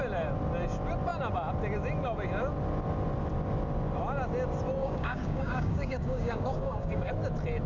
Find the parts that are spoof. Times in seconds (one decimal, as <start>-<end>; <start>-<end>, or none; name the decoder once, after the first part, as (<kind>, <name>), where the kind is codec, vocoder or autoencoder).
4.8-7.1 (codec, DAC)